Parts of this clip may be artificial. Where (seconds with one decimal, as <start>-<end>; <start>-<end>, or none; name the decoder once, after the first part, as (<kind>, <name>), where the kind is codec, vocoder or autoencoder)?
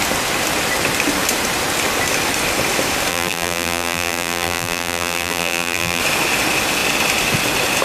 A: 3.1-6.0 (vocoder, BigVGAN v2)